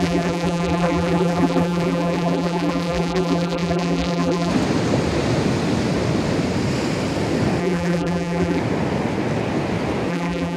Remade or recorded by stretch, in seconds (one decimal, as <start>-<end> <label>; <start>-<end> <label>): 0.0-4.5 remade; 4.5-7.6 recorded; 7.6-8.6 remade; 8.6-10.1 recorded; 10.1-10.6 remade